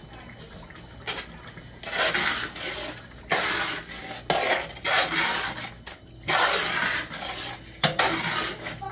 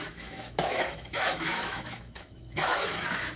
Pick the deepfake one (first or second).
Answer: second